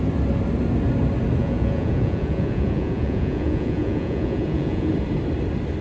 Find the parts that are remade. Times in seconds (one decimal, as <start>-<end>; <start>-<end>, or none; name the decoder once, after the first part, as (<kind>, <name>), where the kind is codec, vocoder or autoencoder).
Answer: 1.4-4.9 (vocoder, Vocos)